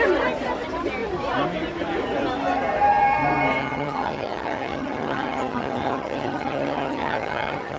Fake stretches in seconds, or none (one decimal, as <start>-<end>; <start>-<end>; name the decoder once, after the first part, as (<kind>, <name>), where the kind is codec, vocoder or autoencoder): 3.6-7.8 (vocoder, HiFi-GAN)